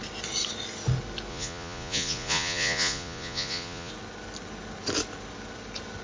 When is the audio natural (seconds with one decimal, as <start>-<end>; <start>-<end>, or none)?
0.0-1.3; 3.9-6.0

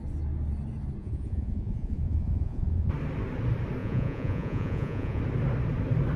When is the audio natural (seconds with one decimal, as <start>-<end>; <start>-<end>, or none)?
0.0-1.0; 2.9-3.8; 5.2-6.2

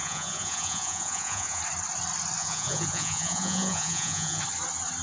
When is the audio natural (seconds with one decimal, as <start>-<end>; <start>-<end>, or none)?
1.6-2.4; 4.4-5.0

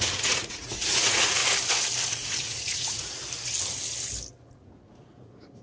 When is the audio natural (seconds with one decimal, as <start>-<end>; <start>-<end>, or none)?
1.4-2.1; 3.2-4.5

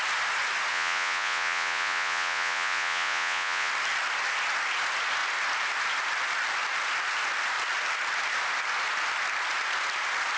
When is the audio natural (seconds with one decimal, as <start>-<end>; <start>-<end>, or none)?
0.0-0.7; 3.7-10.4

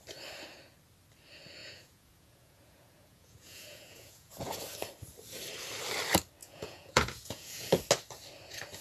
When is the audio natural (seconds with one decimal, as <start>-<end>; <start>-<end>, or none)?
0.0-1.6; 4.6-6.4; 7.8-8.8

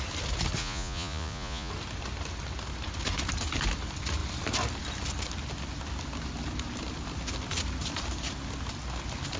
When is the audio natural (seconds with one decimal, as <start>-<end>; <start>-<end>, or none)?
0.0-0.6; 1.7-9.4